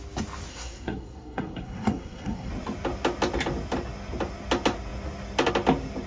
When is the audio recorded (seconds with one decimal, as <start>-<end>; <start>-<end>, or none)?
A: 0.0-0.5; 2.5-6.1